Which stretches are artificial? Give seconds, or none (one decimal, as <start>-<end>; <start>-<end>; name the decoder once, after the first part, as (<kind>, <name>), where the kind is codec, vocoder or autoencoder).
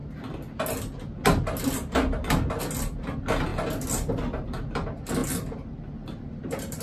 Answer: none